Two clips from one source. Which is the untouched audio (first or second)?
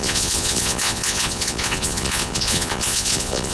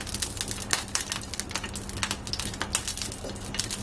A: second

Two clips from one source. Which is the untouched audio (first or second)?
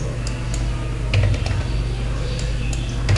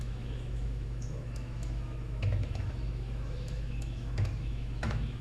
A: first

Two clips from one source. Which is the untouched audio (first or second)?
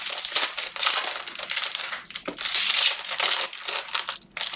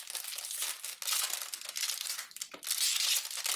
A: second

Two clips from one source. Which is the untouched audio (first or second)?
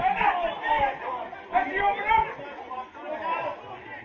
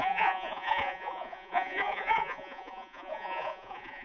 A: first